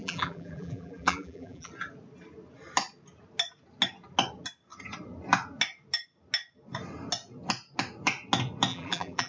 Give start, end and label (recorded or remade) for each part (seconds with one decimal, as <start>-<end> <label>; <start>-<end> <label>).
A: 0.0-1.7 remade; 1.7-8.7 recorded; 8.7-9.3 remade